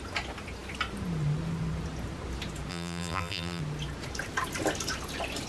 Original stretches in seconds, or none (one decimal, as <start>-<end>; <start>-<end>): 0.0-2.7; 3.6-5.5